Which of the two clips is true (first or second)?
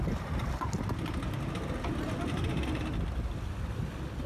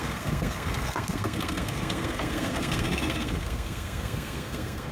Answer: first